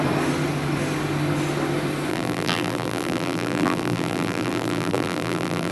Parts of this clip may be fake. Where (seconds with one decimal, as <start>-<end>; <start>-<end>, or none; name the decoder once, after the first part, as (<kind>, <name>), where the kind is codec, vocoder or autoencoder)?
2.1-5.7 (vocoder, BigVGAN v2)

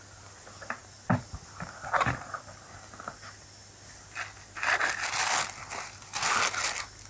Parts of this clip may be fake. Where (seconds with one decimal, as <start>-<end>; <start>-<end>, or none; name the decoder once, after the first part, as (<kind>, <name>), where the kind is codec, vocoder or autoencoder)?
none

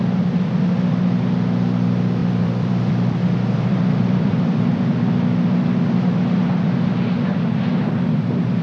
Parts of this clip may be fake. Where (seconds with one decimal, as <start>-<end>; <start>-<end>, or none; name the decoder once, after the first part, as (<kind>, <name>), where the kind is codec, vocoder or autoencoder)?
2.2-4.8 (vocoder, BigVGAN v2)

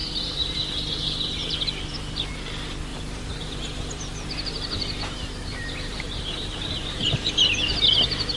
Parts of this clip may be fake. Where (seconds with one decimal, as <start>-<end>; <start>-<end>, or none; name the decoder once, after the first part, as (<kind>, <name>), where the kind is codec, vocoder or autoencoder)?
0.0-1.5 (vocoder, BigVGAN v2); 2.9-7.3

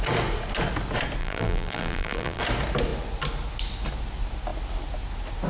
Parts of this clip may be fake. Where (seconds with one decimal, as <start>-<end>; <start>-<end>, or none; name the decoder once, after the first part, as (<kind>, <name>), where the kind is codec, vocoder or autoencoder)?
1.2-2.4 (vocoder, BigVGAN v2)

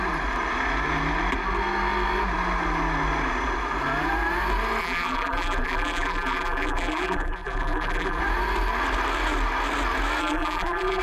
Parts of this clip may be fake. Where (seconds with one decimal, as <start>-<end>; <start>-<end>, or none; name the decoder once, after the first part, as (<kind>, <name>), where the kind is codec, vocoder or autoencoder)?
4.8-8.2 (vocoder, BigVGAN v2); 10.2-11.0

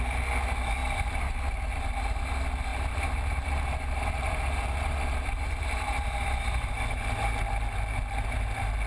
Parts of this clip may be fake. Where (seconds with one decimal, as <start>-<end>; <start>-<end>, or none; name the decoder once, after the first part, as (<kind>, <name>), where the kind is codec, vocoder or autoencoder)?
2.7-6.8 (vocoder, BigVGAN v2)